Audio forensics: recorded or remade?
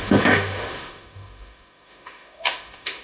remade